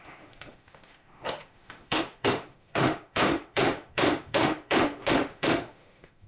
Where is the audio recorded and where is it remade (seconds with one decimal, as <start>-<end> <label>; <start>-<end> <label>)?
0.0-6.3 remade